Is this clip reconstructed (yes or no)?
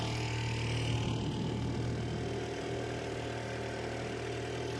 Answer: no